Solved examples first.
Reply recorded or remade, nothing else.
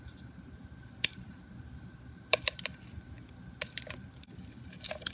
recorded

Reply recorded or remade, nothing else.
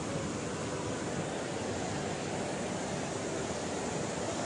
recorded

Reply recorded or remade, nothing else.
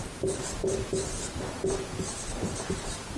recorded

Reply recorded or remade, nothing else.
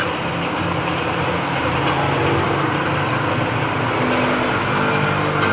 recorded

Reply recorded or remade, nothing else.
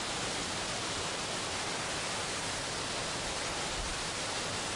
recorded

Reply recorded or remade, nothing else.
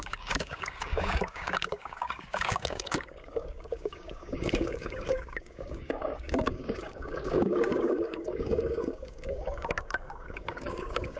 remade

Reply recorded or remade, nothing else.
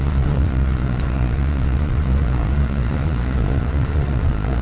remade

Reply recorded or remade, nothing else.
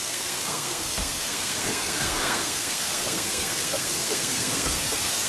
remade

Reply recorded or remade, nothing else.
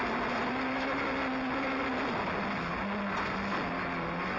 recorded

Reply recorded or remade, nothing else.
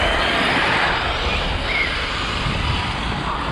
recorded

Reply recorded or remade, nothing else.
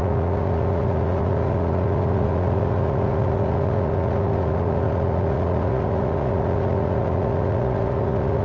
remade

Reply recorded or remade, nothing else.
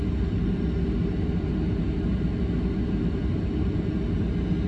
recorded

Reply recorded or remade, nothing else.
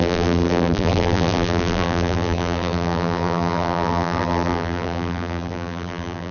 remade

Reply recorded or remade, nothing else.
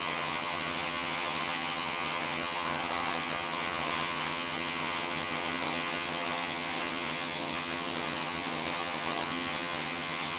remade